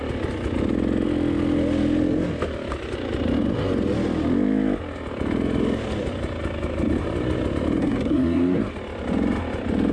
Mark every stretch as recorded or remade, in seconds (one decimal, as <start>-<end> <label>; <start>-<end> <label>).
0.0-7.8 recorded; 7.8-8.6 remade; 8.6-9.9 recorded